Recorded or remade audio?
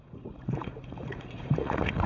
remade